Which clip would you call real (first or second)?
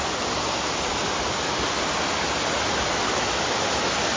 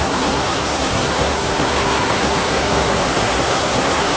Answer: first